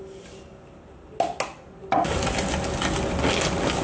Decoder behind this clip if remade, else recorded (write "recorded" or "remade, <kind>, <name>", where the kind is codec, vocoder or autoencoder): recorded